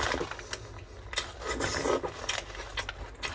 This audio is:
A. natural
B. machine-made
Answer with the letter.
A